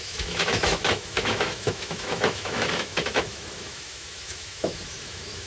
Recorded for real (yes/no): no